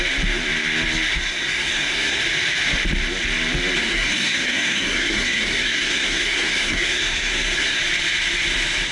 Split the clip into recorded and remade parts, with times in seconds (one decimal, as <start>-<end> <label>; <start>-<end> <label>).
0.0-1.1 recorded; 1.1-2.2 remade; 2.2-3.8 recorded; 3.8-7.8 remade; 7.8-8.9 recorded